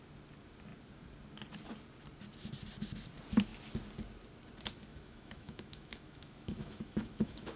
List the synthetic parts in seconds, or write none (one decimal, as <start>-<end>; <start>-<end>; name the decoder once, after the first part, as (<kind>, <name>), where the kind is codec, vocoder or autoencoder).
4.9-7.6 (autoencoder, DAC-VAE)